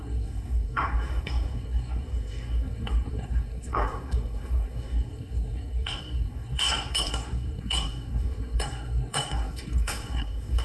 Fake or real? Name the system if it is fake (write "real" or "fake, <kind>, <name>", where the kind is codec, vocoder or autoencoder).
fake, codec, SNAC